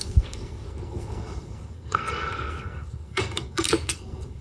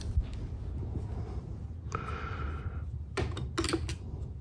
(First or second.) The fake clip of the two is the first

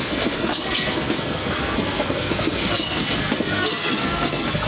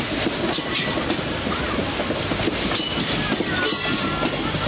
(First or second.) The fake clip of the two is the first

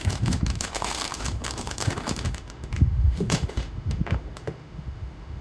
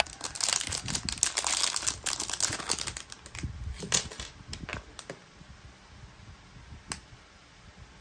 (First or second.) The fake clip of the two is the first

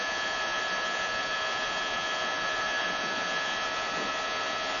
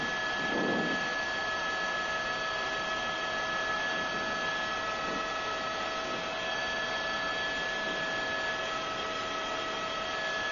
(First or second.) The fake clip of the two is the first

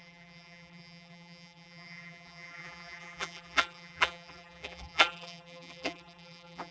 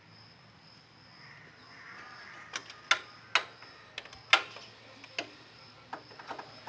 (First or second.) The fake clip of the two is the first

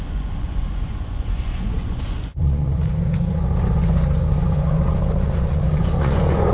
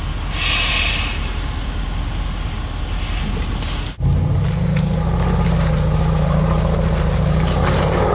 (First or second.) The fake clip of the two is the first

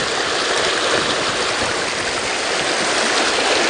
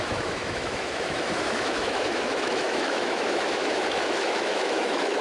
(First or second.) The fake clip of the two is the second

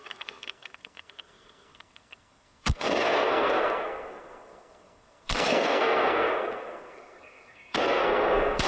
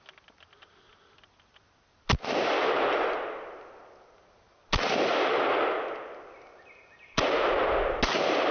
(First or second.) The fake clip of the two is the first